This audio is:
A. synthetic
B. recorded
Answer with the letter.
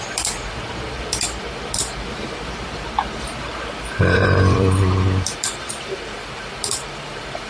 A